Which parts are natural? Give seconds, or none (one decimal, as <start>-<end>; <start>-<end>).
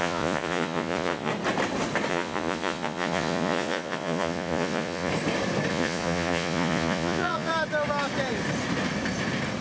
1.3-2.1; 5.1-5.7; 7.5-9.6